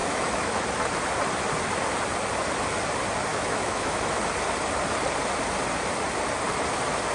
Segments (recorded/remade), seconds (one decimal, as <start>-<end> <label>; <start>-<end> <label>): 0.0-0.7 remade; 0.7-3.3 recorded; 3.3-4.1 remade; 4.1-7.1 recorded